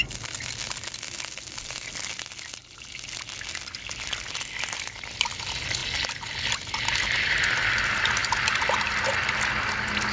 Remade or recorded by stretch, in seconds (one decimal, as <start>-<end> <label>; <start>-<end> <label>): 0.0-10.1 recorded